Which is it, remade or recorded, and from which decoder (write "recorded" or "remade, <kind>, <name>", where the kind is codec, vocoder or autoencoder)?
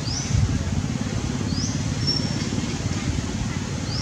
recorded